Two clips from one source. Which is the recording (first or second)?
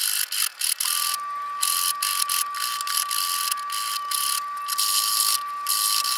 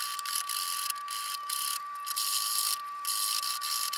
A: first